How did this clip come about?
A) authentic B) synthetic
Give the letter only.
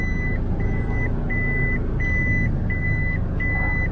A